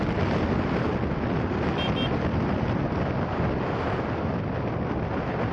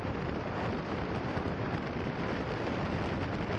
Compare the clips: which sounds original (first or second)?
first